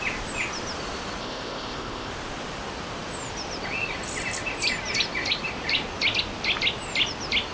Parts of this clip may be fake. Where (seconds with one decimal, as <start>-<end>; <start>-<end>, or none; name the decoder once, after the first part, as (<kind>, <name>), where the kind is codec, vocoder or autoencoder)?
1.2-2.1 (codec, ZipCodec)